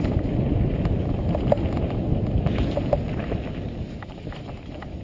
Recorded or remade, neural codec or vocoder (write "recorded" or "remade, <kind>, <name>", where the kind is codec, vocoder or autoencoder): recorded